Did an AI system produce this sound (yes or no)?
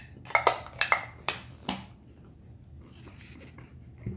no